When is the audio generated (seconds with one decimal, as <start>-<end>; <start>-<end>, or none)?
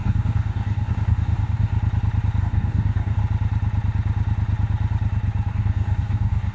0.0-1.7; 2.4-3.2; 5.5-6.5